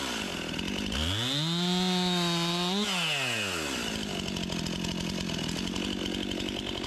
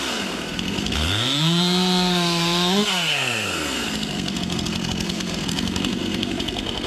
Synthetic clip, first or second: second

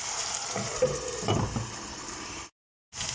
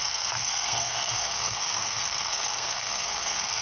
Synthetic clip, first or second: second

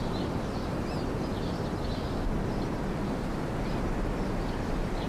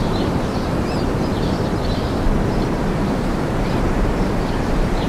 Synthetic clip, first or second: second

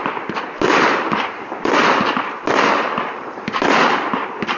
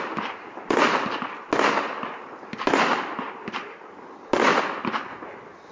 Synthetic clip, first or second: first